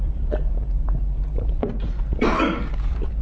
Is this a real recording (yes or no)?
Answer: yes